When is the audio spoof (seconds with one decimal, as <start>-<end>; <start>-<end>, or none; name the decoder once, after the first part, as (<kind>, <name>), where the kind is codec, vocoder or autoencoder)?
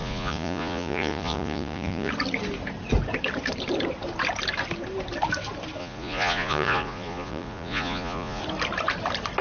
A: 0.0-2.1 (vocoder, Vocos); 5.8-8.4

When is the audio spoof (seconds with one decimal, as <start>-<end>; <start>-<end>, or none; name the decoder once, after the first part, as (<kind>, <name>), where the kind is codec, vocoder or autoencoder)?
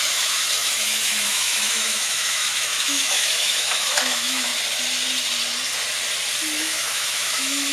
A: 0.0-4.5 (autoencoder, DAC-VAE); 6.6-7.7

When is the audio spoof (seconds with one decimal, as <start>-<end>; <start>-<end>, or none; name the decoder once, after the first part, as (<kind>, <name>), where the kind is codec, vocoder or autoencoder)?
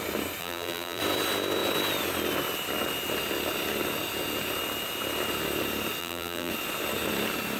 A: 0.4-1.0 (vocoder, BigVGAN v2); 6.0-6.5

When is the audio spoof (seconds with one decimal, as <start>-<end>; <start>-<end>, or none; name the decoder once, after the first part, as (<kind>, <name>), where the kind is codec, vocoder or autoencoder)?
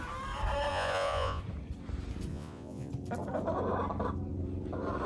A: 0.7-1.4 (vocoder, Vocos); 2.3-2.9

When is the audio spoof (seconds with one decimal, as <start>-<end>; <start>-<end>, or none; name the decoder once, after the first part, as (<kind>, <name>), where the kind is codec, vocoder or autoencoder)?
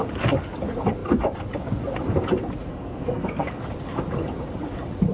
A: 2.7-3.6 (codec, SNAC)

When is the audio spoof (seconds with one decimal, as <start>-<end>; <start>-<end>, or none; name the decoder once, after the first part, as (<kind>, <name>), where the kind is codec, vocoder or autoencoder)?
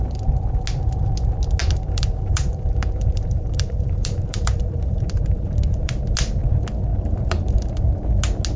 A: 1.6-5.9 (vocoder, BigVGAN v2); 6.9-7.7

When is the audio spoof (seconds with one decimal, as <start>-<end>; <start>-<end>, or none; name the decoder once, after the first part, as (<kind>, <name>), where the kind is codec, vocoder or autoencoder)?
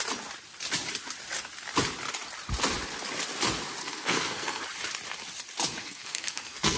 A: 3.8-4.6 (codec, SNAC); 5.8-6.8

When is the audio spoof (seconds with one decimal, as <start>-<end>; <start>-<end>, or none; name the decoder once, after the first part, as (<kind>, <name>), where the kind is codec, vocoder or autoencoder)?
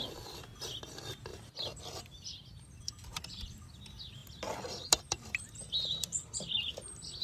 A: none